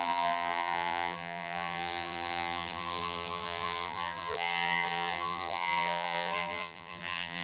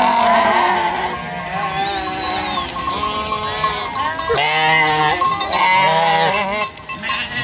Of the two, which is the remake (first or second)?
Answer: first